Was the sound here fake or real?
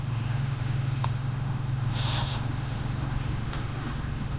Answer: fake